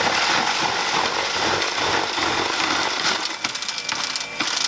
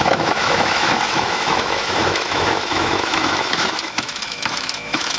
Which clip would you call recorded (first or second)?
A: first